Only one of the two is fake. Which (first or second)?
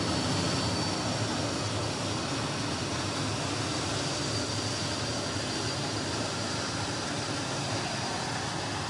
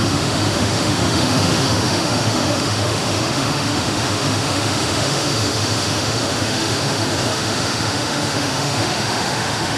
second